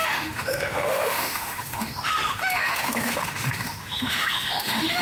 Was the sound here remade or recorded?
remade